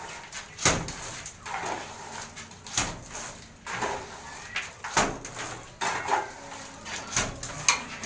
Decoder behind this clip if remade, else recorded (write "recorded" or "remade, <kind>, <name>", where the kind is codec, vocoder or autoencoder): recorded